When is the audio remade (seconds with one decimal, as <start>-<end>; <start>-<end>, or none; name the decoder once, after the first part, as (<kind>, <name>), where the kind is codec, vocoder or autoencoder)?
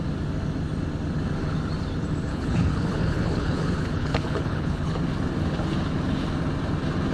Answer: 2.3-4.9 (codec, HILCodec)